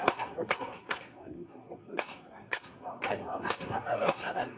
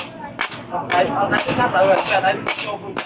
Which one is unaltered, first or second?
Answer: second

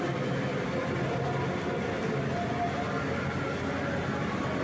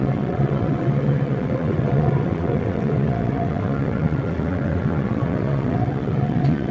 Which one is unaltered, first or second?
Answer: first